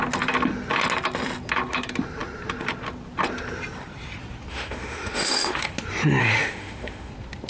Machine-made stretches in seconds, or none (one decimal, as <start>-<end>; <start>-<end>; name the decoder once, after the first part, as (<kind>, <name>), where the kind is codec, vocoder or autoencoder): 4.5-5.7 (autoencoder, DAC-VAE); 6.2-7.1